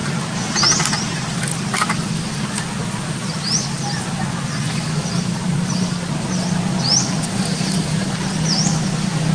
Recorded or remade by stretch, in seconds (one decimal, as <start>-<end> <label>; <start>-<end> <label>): 0.0-9.3 recorded